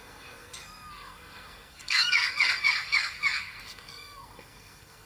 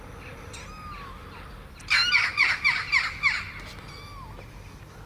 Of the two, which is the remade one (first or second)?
first